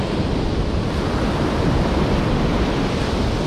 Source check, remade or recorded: recorded